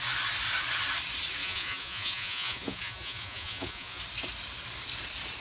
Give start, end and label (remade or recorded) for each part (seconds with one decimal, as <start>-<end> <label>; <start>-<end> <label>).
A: 0.0-1.4 recorded; 1.4-4.0 remade; 4.0-5.4 recorded

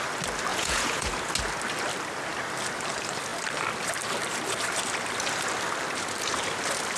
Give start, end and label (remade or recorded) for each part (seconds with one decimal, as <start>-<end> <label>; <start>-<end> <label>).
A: 0.0-0.5 recorded; 0.5-1.1 remade; 1.1-7.0 recorded

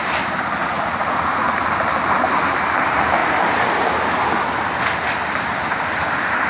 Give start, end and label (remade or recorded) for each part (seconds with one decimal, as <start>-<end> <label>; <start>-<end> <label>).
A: 0.0-0.6 recorded; 0.6-1.7 remade; 1.7-6.5 recorded

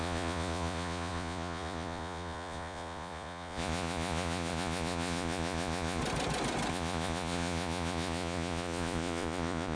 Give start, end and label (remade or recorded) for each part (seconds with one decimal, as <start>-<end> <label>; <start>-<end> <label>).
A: 0.0-6.0 remade; 6.0-6.7 recorded; 6.7-9.8 remade

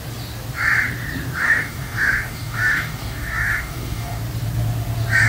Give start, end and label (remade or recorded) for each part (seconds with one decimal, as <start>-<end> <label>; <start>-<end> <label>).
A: 0.0-1.4 recorded; 1.4-4.2 remade; 4.2-5.3 recorded

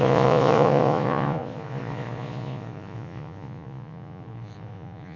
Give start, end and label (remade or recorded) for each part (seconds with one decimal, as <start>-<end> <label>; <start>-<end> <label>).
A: 0.0-5.2 remade

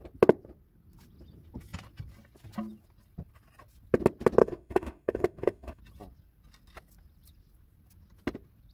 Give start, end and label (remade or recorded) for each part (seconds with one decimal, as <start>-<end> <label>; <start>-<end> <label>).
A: 0.0-4.4 recorded; 4.4-5.8 remade; 5.8-8.7 recorded

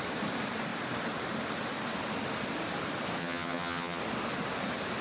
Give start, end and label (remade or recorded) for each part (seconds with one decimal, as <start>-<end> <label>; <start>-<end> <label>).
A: 0.0-3.2 recorded; 3.2-4.0 remade; 4.0-5.0 recorded